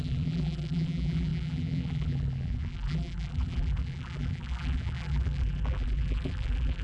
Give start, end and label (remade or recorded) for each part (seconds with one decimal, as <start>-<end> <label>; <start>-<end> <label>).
0.0-6.8 remade